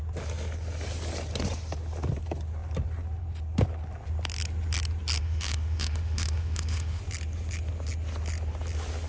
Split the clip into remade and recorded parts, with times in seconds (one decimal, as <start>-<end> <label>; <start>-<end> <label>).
0.0-5.2 recorded; 5.2-7.0 remade; 7.0-9.1 recorded